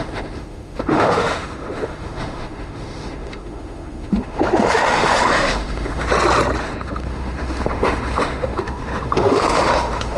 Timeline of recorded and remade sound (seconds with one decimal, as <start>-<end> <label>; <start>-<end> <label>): 0.0-6.1 remade; 6.1-6.6 recorded; 6.6-10.2 remade